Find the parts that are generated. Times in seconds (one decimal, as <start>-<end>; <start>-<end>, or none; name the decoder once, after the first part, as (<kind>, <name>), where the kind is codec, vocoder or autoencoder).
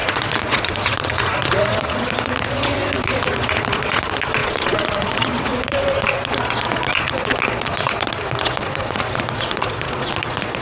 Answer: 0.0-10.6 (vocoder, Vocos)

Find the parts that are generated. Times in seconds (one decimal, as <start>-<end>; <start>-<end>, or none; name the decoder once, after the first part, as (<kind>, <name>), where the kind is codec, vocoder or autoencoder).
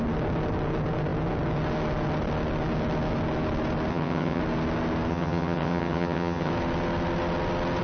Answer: 3.9-4.4 (vocoder, HiFi-GAN); 5.1-6.5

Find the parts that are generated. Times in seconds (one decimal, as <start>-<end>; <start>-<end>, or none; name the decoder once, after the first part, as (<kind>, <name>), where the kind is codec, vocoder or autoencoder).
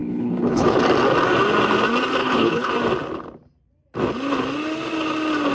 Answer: 0.0-0.8 (codec, HILCodec); 2.2-2.7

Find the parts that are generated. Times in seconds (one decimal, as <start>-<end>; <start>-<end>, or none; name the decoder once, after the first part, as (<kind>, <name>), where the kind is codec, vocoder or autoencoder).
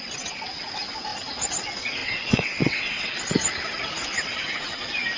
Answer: 2.0-3.2 (vocoder, WaveNeXt)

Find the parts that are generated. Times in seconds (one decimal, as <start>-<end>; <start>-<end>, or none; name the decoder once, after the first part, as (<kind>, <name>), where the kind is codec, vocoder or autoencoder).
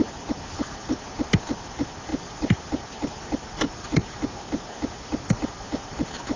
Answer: none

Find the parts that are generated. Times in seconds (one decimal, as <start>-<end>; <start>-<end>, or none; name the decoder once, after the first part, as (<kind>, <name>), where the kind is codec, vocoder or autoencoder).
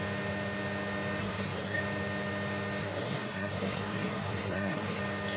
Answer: 1.2-1.8 (codec, SNAC); 2.8-5.0